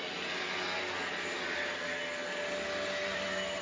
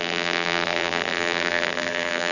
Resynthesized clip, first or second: second